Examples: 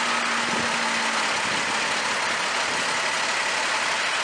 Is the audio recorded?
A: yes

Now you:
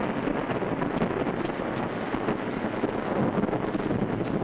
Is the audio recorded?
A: yes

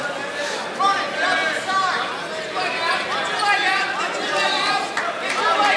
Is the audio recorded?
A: yes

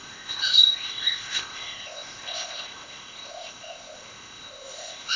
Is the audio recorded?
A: no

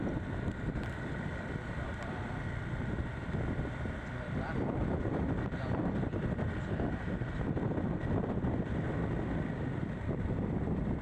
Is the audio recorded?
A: no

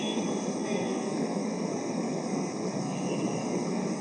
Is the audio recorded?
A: no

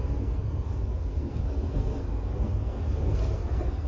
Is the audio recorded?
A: no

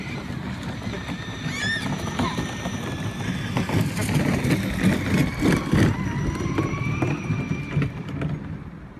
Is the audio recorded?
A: yes